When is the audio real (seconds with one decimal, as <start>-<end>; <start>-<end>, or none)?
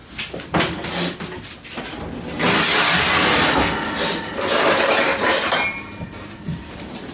0.0-5.1